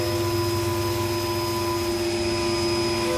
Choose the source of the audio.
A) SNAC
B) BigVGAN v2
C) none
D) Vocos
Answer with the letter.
C